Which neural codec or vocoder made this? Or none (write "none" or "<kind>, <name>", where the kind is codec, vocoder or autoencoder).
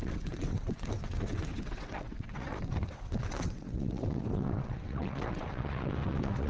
vocoder, WaveNeXt